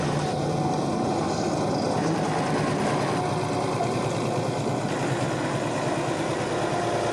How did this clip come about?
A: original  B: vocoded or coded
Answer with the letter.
A